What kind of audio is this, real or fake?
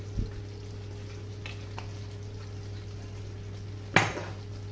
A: real